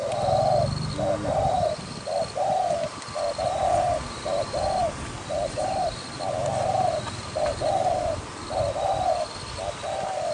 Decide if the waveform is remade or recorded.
recorded